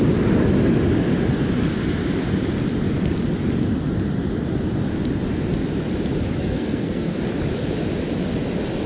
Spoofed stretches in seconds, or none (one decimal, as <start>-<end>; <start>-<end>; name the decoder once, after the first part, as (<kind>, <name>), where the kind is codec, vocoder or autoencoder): 6.4-7.1 (codec, SNAC)